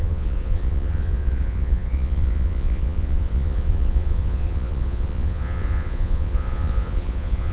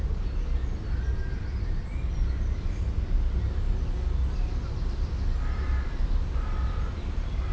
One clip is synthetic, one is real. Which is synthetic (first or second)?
first